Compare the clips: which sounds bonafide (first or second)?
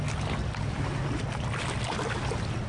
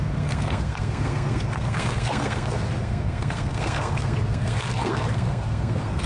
first